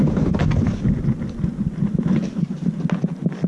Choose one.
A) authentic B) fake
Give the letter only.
A